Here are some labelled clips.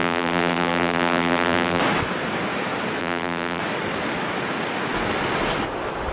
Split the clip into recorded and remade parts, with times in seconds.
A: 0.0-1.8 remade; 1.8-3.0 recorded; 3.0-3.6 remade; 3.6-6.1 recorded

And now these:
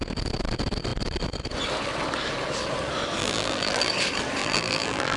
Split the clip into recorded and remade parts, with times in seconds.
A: 0.0-3.2 recorded; 3.2-3.9 remade; 3.9-4.4 recorded; 4.4-5.2 remade

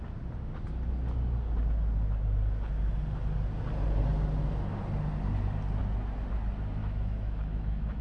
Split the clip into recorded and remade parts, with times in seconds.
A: 0.0-6.8 recorded; 6.8-8.0 remade